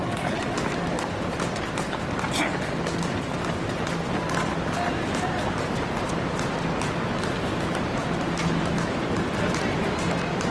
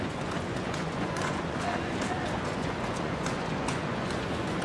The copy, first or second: second